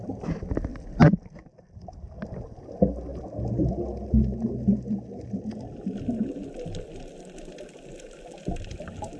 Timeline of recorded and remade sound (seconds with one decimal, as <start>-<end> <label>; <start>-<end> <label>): 0.0-0.7 recorded; 0.7-1.3 remade; 1.3-9.2 recorded